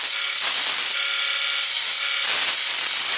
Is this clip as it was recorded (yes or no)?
yes